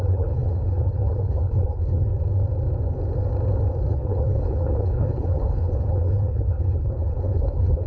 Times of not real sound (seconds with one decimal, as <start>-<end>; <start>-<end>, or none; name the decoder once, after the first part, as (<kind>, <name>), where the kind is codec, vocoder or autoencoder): 0.0-2.1 (codec, HILCodec); 3.9-7.9